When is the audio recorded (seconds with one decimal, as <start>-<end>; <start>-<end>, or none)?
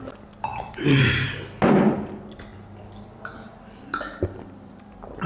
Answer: 0.0-0.5; 1.4-5.3